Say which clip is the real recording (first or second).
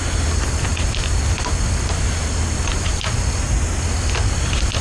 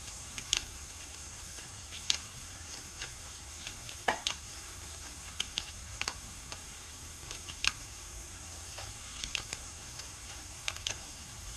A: first